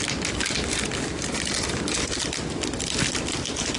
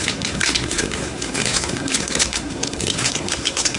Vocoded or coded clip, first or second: second